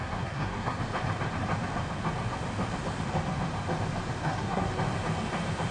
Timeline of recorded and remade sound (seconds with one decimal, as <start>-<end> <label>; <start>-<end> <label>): 0.0-0.8 remade; 0.8-4.2 recorded; 4.2-4.7 remade; 4.7-5.7 recorded